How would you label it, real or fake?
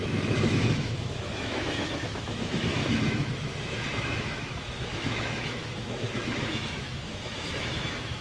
fake